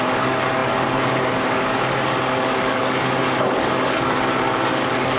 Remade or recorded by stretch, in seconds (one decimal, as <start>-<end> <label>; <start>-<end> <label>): 0.0-5.2 remade